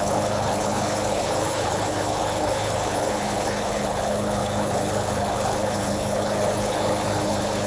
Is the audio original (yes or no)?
no